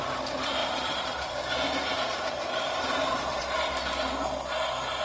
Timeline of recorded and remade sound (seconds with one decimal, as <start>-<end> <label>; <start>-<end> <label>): 0.0-0.6 recorded; 0.6-3.4 remade; 3.4-5.0 recorded